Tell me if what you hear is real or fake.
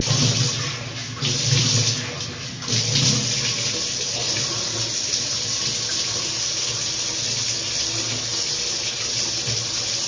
real